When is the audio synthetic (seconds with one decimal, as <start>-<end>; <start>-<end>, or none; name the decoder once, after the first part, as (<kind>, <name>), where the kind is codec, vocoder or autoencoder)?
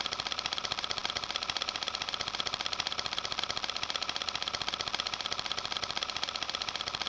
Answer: 0.0-7.1 (vocoder, BigVGAN v2)